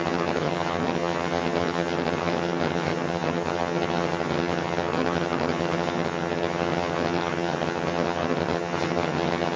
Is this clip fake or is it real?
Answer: fake